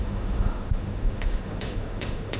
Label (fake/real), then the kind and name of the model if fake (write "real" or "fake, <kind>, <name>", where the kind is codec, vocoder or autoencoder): fake, autoencoder, DAC-VAE